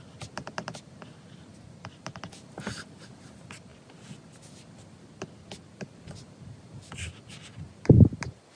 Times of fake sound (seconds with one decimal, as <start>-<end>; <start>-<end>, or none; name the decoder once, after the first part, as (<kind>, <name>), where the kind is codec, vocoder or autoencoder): 1.5-2.2 (vocoder, BigVGAN v2)